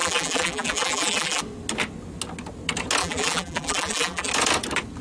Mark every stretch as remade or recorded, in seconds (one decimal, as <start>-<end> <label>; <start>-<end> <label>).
0.0-1.4 remade; 1.4-3.0 recorded; 3.0-4.3 remade; 4.3-5.0 recorded